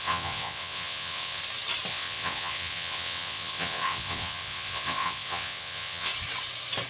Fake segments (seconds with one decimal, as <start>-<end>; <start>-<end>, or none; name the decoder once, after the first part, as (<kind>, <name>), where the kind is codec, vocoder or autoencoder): 0.0-1.4 (vocoder, WaveNeXt); 1.9-6.1